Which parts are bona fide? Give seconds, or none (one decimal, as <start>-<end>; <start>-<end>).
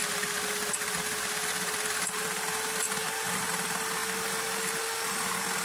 0.0-5.6